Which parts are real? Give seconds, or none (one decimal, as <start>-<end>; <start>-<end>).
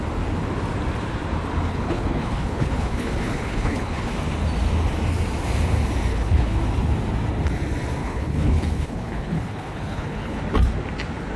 0.0-1.7; 4.1-6.1; 6.6-8.0; 10.4-11.4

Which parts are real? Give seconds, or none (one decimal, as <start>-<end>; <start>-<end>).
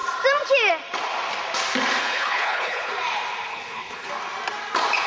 0.0-2.0; 2.9-3.5; 4.1-5.1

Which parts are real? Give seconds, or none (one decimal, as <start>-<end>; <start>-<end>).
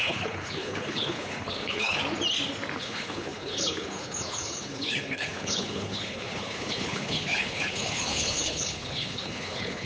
2.0-2.8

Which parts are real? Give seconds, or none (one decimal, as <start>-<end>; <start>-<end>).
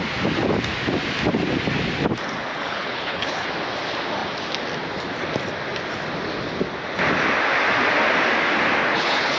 0.0-2.5; 3.5-8.8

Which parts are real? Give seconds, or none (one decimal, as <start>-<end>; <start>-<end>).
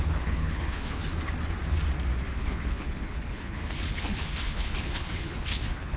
1.0-2.3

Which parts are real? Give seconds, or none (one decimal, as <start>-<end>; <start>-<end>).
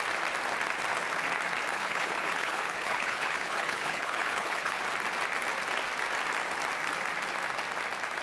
0.0-1.7; 4.8-8.2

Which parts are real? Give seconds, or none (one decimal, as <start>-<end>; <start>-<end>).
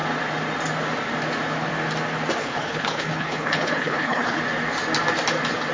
0.0-2.4; 4.4-5.7